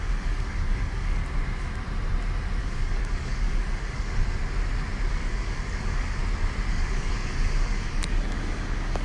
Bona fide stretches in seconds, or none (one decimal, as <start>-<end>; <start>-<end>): 1.2-2.6; 4.2-5.1; 6.2-6.7